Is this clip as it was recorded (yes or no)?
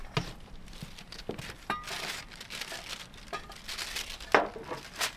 yes